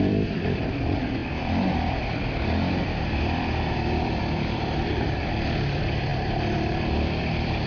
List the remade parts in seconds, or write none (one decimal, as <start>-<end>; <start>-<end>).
0.0-7.7